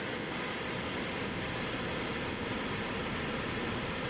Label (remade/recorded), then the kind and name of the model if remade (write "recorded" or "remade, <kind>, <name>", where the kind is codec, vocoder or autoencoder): recorded